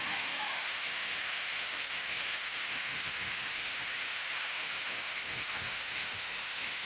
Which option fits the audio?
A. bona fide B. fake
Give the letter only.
B